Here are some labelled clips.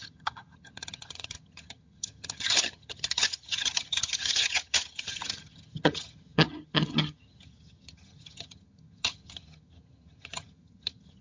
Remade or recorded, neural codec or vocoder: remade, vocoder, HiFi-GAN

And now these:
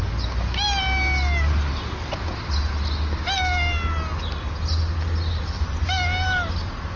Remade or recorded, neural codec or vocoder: recorded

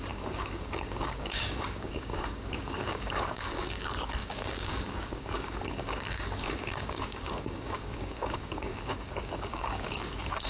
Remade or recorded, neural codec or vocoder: remade, codec, DAC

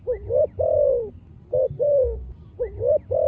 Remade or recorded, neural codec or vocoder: recorded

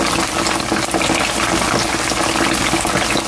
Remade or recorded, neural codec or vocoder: recorded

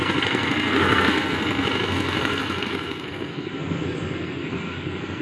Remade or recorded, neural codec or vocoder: remade, codec, SNAC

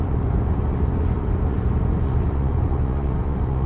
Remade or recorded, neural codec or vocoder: remade, vocoder, Vocos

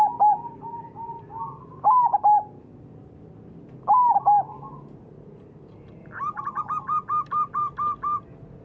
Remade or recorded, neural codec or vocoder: recorded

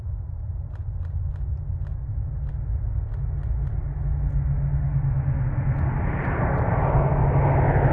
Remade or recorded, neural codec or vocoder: recorded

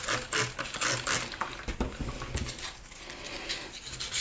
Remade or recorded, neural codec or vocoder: recorded